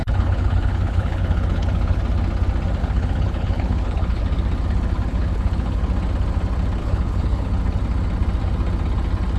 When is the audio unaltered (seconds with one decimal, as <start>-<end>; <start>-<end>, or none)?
2.0-2.8; 4.2-5.1; 5.8-6.8; 7.5-9.4